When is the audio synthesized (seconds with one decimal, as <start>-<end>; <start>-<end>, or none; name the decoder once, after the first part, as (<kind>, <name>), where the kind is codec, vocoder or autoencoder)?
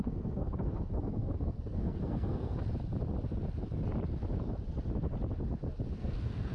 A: 0.0-2.6 (codec, SNAC); 5.9-6.5